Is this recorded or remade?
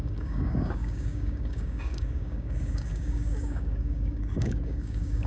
remade